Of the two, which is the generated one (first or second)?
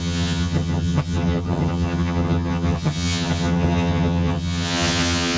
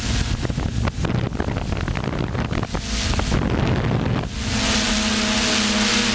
first